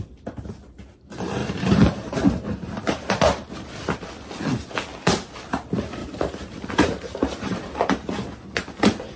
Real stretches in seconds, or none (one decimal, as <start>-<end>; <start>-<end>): 0.0-1.4; 4.1-6.0; 7.8-9.2